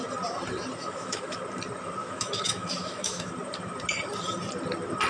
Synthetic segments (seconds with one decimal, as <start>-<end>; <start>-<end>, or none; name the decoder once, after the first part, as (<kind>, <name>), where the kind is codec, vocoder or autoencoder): 0.8-1.4 (autoencoder, DAC-VAE); 2.0-3.3